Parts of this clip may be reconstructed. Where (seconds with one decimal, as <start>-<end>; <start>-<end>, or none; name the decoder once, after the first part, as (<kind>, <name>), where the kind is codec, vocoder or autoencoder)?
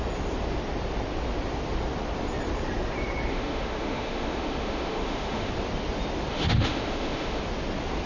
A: 3.3-5.5 (autoencoder, DAC-VAE); 6.3-7.4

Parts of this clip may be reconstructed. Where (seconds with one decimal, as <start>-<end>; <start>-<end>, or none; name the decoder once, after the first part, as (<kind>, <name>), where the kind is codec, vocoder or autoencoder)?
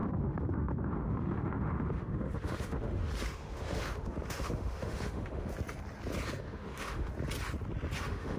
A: 0.0-5.5 (autoencoder, DAC-VAE); 6.4-7.1; 8.0-8.4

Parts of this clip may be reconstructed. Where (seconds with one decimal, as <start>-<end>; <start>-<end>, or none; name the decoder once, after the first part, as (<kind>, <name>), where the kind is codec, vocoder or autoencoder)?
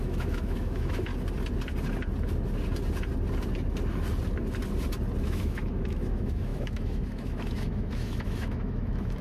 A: 0.0-1.1 (autoencoder, DAC-VAE); 5.2-9.2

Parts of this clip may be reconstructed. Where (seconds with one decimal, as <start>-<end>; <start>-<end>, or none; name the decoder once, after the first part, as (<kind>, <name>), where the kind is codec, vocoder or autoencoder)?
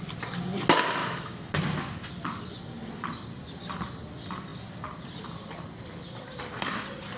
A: 1.0-1.5 (autoencoder, DAC-VAE)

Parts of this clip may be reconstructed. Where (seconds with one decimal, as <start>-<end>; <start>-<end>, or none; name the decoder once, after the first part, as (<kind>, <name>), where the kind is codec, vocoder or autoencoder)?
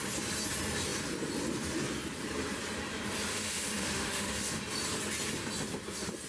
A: 3.3-4.6 (autoencoder, DAC-VAE)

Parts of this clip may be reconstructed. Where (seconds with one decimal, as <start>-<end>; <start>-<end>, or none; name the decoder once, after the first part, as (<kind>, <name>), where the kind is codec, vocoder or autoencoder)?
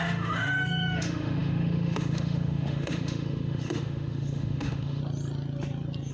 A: 0.0-5.0 (autoencoder, DAC-VAE)